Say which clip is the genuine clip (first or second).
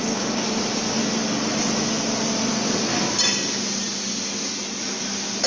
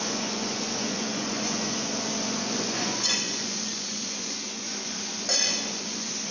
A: first